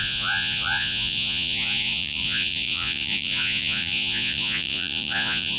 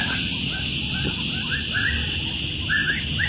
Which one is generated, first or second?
first